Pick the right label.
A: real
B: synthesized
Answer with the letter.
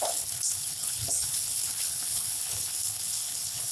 B